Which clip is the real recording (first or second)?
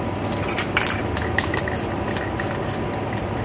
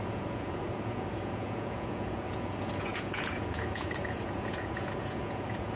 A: first